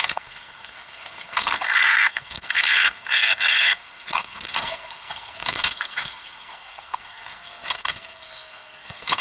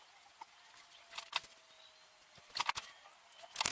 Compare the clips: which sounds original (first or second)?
second